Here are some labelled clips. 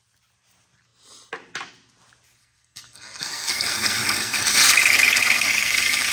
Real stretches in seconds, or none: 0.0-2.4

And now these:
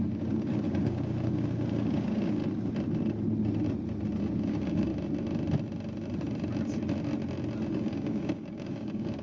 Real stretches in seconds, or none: 2.4-4.4; 4.9-7.7

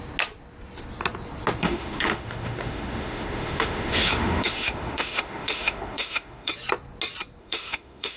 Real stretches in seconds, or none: 0.0-1.6; 6.5-7.4

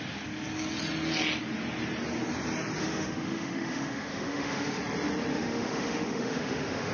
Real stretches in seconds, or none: 0.0-2.8; 4.8-5.3

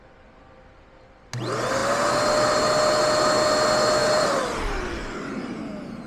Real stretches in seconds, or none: 0.0-4.0; 5.6-6.1